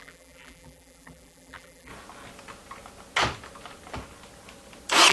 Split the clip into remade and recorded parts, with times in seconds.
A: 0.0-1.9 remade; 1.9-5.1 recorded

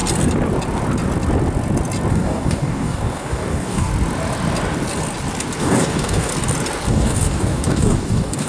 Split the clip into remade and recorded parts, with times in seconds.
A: 0.0-2.1 recorded; 2.1-3.9 remade; 3.9-5.6 recorded; 5.6-6.3 remade; 6.3-6.9 recorded; 6.9-8.5 remade

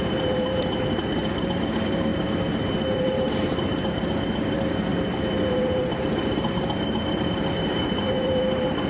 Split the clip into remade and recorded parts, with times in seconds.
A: 0.0-4.9 remade; 4.9-5.5 recorded; 5.5-8.9 remade